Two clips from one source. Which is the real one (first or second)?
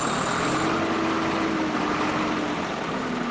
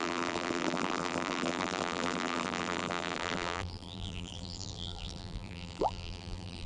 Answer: first